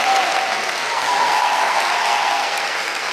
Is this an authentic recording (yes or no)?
no